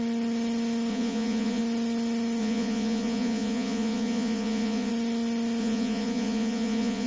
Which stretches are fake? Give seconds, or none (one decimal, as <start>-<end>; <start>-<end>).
0.9-1.6; 2.4-4.9; 5.6-7.1